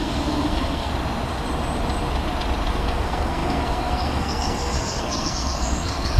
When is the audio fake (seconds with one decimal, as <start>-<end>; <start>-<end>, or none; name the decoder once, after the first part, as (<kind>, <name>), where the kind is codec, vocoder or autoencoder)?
0.0-0.9 (codec, SNAC); 2.7-6.2